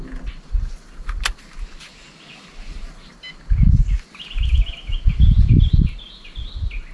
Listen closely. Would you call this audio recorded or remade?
recorded